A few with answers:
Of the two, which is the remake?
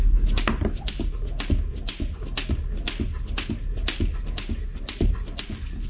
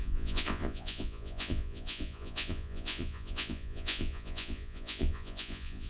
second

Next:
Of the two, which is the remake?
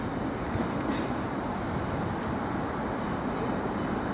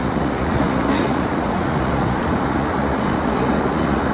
second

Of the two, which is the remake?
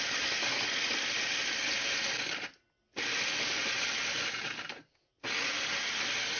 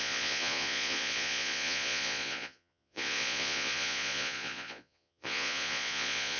second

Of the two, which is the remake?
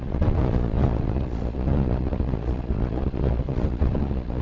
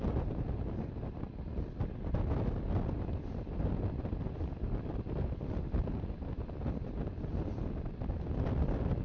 first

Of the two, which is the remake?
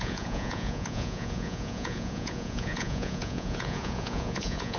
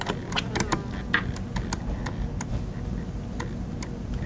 first